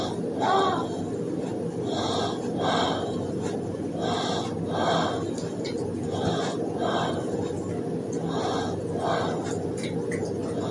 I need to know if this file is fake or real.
real